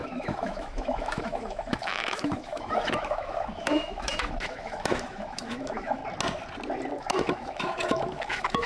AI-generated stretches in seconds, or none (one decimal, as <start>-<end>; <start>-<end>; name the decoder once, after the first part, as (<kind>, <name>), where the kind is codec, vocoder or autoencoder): 0.0-6.0 (autoencoder, DAC-VAE); 7.0-8.7